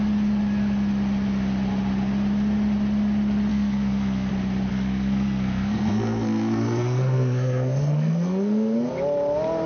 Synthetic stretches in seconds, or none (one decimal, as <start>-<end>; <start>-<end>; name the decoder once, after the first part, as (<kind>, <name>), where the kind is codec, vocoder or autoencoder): 3.5-4.3 (codec, SNAC); 4.7-8.9